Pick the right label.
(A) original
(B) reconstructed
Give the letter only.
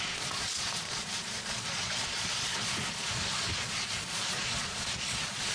B